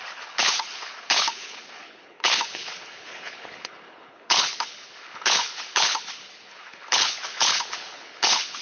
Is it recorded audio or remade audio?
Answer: remade